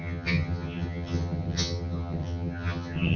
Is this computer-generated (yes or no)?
yes